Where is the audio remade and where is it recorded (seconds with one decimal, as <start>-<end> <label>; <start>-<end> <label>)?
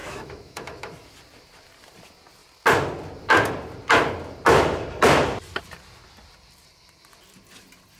0.0-0.9 remade; 0.9-8.0 recorded